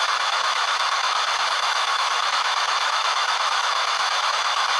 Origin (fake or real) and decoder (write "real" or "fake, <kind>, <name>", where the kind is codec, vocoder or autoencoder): fake, autoencoder, DAC-VAE